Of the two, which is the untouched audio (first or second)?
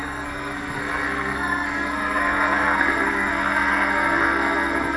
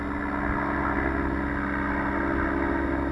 second